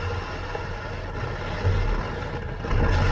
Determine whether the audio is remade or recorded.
recorded